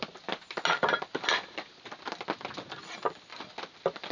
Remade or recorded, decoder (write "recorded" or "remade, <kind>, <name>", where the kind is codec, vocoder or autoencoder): recorded